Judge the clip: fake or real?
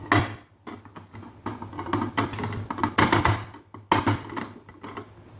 real